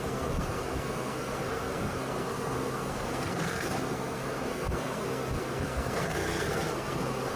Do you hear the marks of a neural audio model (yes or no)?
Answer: yes